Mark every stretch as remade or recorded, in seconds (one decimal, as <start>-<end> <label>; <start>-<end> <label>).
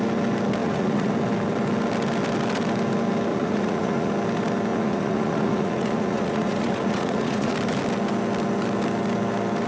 0.0-0.6 recorded; 0.6-1.1 remade; 1.1-3.3 recorded; 3.3-4.1 remade; 4.1-4.7 recorded; 4.7-7.5 remade; 7.5-9.7 recorded